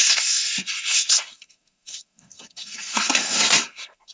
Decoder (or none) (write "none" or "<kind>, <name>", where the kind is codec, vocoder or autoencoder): codec, SNAC